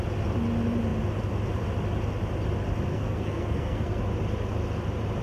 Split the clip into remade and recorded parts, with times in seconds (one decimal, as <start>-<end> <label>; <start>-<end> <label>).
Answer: 0.0-2.9 recorded; 2.9-4.0 remade; 4.0-5.2 recorded